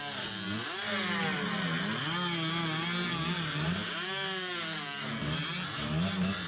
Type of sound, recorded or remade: recorded